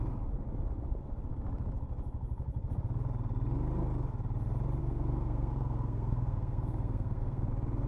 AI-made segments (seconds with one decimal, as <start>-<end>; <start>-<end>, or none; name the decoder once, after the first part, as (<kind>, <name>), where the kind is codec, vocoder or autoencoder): 4.8-7.5 (codec, SNAC)